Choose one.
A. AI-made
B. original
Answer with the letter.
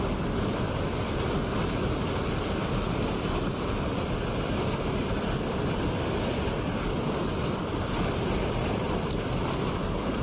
B